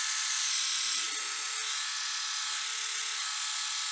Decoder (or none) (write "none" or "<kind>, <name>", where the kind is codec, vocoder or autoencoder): none